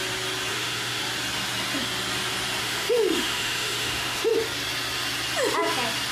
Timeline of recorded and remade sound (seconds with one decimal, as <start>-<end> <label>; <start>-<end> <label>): 0.0-0.5 recorded; 0.5-1.0 remade; 1.0-2.6 recorded; 2.6-4.3 remade; 4.3-6.1 recorded